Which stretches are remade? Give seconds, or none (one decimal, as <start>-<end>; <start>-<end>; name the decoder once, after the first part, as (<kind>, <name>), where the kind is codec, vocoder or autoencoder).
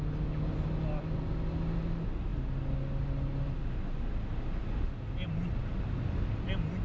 none